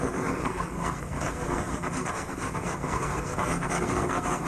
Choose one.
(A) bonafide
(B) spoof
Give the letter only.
B